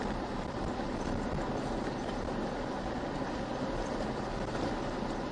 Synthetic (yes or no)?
no